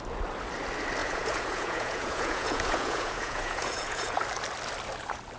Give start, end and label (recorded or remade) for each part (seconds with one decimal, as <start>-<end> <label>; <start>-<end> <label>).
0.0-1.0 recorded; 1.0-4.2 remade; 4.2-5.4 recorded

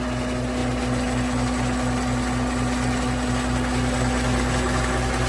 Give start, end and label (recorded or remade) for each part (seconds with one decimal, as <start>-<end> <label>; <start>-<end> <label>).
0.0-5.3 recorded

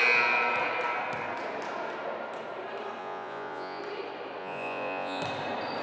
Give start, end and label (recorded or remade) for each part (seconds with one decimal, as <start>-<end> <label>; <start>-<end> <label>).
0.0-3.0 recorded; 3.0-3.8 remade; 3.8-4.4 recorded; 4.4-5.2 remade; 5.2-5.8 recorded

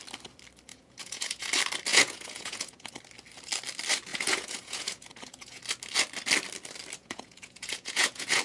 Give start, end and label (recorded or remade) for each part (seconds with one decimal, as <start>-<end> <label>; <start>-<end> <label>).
0.0-0.7 recorded; 0.7-1.5 remade; 1.5-1.9 recorded; 1.9-2.9 remade; 2.9-4.1 recorded; 4.1-5.6 remade; 5.6-7.0 recorded; 7.0-8.4 remade

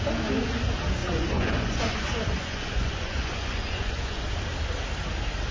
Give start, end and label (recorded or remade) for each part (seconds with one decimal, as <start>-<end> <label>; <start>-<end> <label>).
0.0-1.0 recorded; 1.0-4.3 remade; 4.3-5.5 recorded